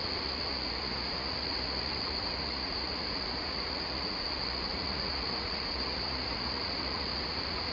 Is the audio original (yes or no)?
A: no